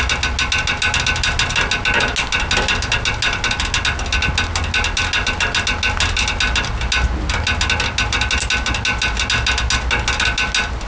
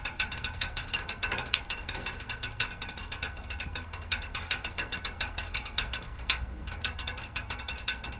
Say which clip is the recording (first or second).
first